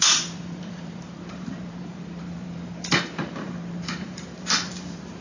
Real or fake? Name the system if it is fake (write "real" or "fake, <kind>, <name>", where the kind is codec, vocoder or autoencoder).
fake, vocoder, BigVGAN v2